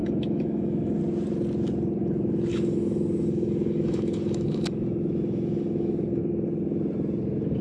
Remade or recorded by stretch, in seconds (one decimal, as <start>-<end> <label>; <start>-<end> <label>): 0.0-1.0 remade; 1.0-2.5 recorded; 2.5-6.2 remade; 6.2-7.6 recorded